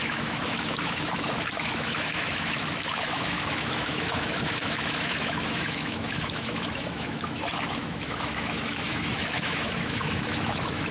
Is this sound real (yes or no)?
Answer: no